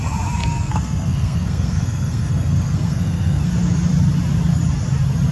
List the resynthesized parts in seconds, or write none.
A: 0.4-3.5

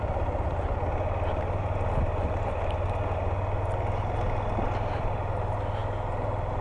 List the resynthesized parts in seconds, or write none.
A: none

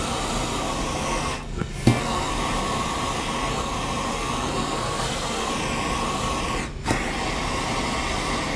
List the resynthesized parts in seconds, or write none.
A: 0.9-2.3; 4.1-5.5

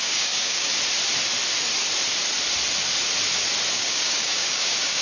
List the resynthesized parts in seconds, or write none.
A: 0.0-0.7; 3.7-5.0

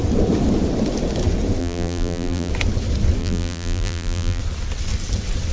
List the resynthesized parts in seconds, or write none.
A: 1.6-2.5; 3.2-4.4

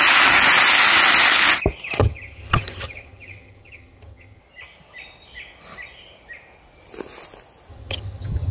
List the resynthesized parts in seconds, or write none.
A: 2.0-4.4; 7.7-8.5

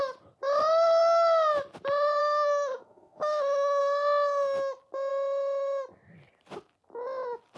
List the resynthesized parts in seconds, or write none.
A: 2.2-3.8

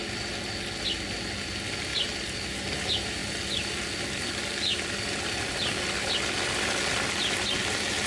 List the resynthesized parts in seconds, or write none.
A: none